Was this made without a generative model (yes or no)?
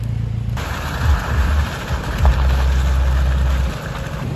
yes